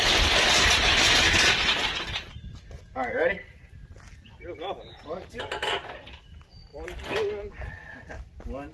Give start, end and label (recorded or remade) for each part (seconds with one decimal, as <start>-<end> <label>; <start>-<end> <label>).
0.0-8.7 recorded